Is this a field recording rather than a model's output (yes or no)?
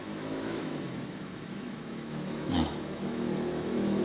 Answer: no